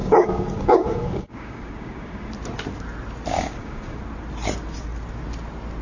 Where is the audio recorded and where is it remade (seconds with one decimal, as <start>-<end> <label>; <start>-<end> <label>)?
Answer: 0.0-2.3 remade; 2.3-3.3 recorded; 3.3-4.0 remade; 4.0-5.8 recorded